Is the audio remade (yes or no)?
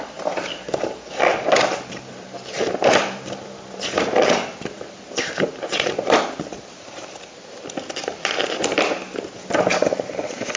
yes